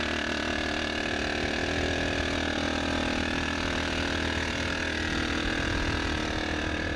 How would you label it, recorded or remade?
recorded